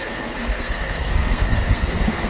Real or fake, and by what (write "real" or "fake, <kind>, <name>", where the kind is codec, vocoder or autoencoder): fake, codec, SNAC